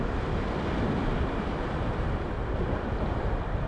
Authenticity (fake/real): real